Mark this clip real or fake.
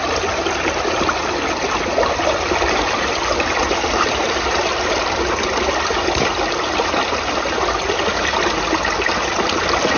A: real